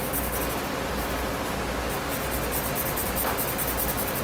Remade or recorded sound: recorded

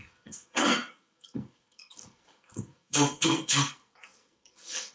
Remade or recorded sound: remade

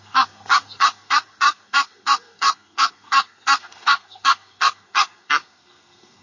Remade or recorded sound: remade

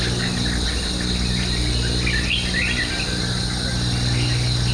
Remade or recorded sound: recorded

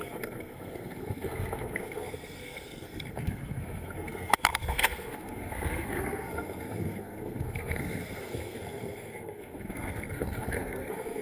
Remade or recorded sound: remade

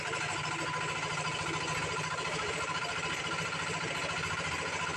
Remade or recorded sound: recorded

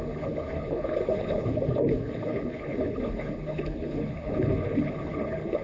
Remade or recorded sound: remade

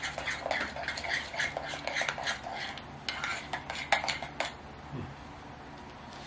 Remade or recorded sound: recorded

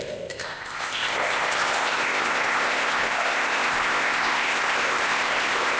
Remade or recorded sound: remade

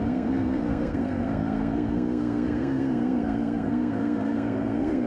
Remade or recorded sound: remade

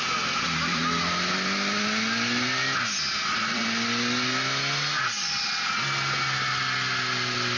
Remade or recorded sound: recorded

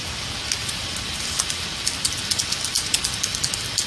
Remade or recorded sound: recorded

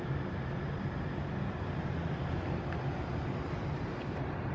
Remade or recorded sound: recorded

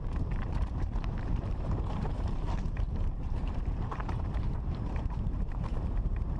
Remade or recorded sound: remade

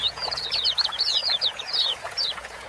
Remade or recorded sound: remade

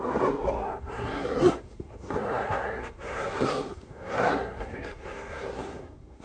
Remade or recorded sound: remade